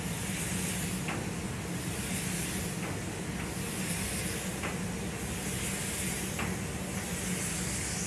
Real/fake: real